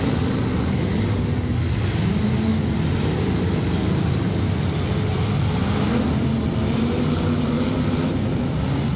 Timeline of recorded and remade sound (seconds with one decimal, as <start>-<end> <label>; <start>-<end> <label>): 0.0-9.0 recorded